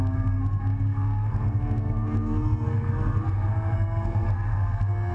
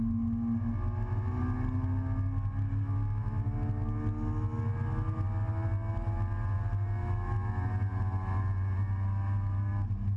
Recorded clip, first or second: second